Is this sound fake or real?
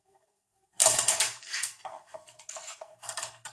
fake